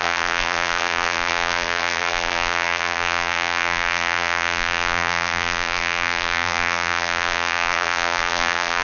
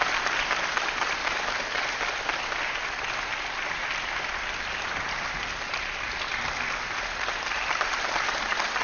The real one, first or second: second